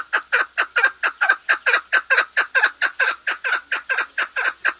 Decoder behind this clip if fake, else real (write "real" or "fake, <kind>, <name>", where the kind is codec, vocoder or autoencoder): real